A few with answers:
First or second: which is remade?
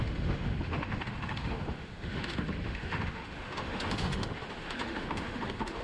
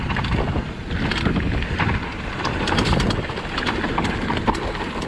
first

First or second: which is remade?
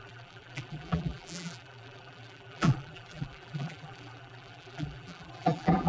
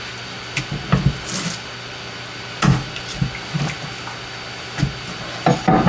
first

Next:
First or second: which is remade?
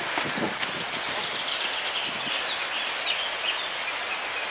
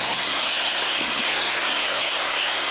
second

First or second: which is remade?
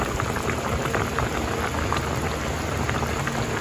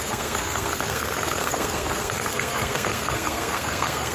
second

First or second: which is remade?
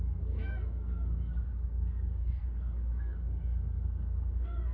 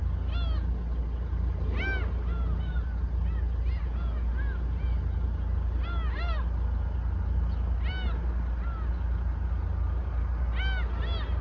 first